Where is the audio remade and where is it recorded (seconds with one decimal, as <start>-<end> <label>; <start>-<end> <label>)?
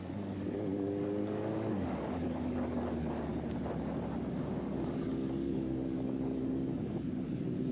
0.0-3.3 remade; 3.3-4.6 recorded; 4.6-7.7 remade